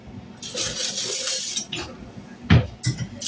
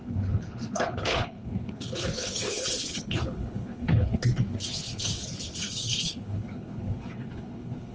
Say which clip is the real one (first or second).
first